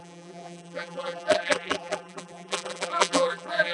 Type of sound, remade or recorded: remade